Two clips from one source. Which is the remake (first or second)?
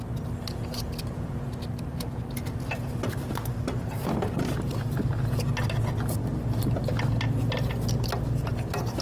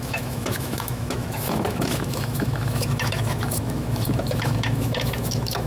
second